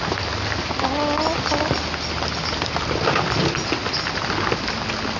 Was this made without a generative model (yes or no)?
yes